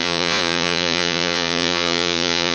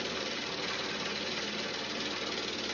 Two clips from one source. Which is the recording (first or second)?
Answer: second